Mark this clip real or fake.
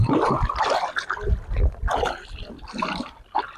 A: real